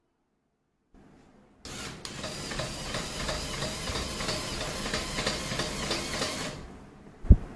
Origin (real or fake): real